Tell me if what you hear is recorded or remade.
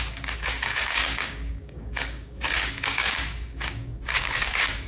remade